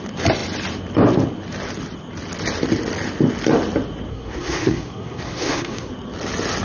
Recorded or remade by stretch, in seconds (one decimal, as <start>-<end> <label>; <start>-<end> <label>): 0.0-4.1 recorded; 4.1-5.9 remade; 5.9-6.6 recorded